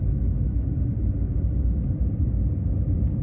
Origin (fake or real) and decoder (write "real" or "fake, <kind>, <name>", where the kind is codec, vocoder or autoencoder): real